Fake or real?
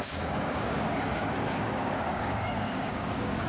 fake